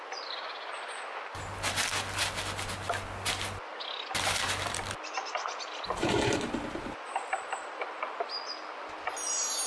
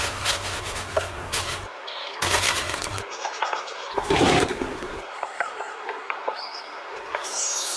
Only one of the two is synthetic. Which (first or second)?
second